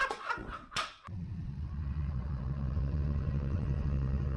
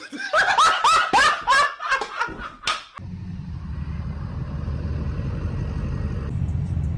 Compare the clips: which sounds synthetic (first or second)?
first